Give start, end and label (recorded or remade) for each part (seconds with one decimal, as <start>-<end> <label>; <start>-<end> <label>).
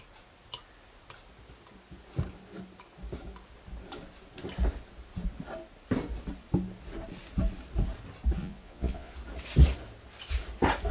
0.0-8.4 recorded; 8.4-9.1 remade; 9.1-10.9 recorded